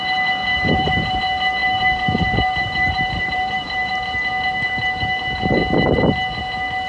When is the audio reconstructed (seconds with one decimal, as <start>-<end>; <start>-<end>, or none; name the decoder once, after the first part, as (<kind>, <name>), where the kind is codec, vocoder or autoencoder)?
0.5-1.2 (vocoder, BigVGAN v2); 1.6-3.9